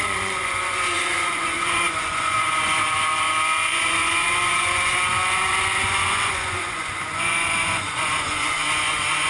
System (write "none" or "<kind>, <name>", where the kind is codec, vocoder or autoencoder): vocoder, Vocos